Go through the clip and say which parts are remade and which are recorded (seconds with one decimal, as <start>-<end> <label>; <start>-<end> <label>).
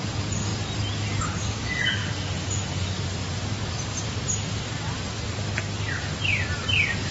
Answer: 0.0-7.1 recorded